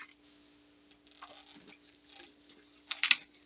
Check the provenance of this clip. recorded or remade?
recorded